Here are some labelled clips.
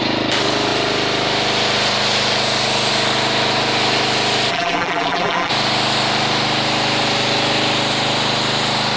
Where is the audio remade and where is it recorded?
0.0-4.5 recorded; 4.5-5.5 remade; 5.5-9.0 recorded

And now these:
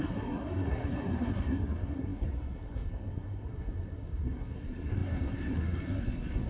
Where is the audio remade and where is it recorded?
0.0-6.5 remade

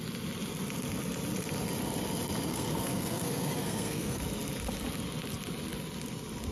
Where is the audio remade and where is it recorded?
0.0-2.5 recorded; 2.5-4.2 remade; 4.2-6.5 recorded

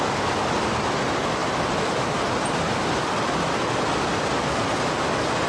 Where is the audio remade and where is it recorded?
0.0-5.5 recorded